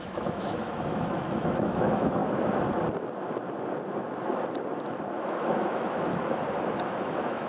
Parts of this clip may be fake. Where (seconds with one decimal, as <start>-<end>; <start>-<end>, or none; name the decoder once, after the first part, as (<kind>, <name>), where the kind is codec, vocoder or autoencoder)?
0.0-2.2 (autoencoder, DAC-VAE); 5.2-6.1; 6.8-7.5